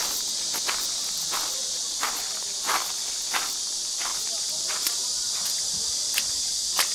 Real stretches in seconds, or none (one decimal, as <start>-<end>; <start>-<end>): 0.0-6.9